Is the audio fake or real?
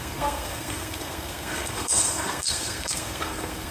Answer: fake